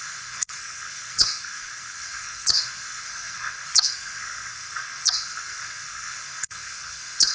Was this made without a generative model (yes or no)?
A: no